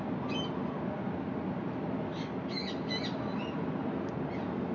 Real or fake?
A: real